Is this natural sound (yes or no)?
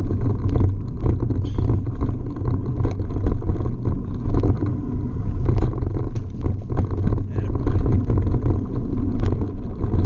yes